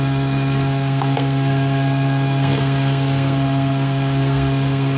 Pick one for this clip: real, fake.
fake